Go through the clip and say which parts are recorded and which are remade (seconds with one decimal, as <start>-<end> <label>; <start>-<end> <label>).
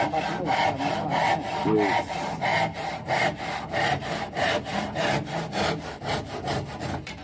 0.0-7.2 recorded